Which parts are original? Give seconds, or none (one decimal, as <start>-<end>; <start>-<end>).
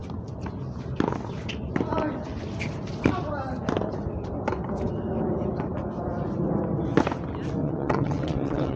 0.0-7.6